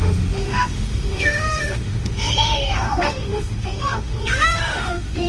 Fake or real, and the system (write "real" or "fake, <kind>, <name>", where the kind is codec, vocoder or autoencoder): fake, autoencoder, DAC-VAE